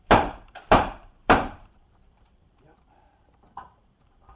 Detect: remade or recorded remade